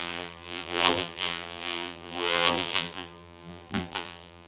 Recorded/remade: remade